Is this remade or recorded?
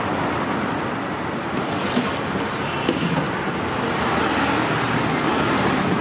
recorded